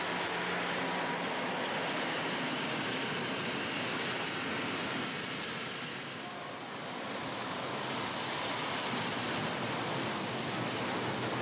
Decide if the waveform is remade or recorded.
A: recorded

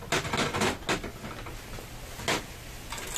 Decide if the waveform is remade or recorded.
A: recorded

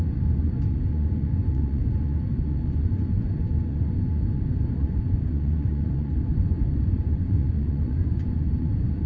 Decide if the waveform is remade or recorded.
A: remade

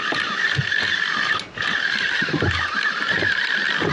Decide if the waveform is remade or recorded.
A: recorded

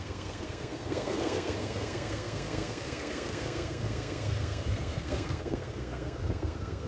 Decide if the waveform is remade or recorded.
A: remade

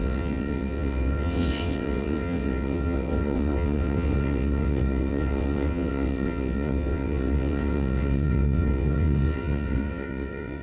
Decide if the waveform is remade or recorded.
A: remade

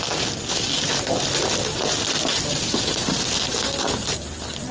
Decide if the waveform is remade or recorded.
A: recorded